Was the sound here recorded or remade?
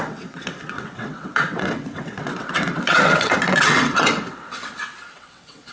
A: remade